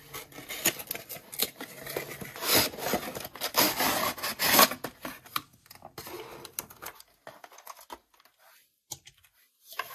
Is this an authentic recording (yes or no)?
yes